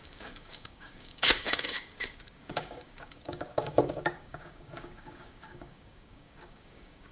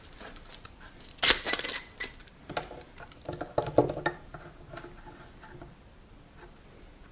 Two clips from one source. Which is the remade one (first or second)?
first